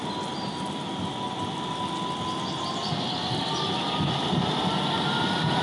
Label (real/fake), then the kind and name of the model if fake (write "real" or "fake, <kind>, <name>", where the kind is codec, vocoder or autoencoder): real